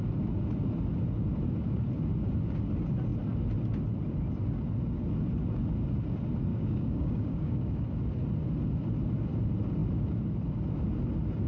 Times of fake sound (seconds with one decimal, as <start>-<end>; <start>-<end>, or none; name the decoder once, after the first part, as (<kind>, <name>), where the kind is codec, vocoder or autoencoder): 6.5-7.9 (codec, DAC)